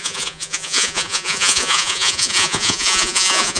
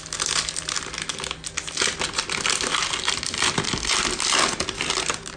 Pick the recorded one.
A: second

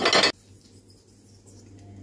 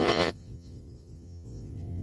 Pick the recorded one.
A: first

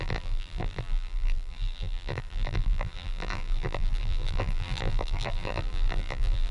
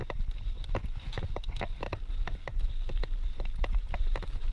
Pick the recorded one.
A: second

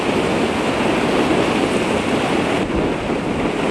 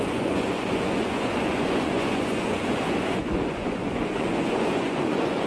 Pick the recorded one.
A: first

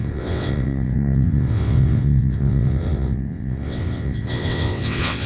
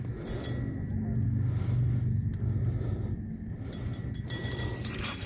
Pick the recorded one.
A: second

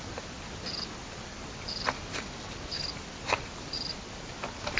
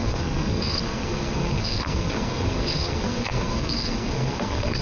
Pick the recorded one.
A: first